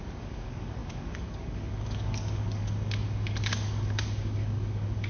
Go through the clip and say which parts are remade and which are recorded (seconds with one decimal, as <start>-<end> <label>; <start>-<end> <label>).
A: 0.0-5.1 remade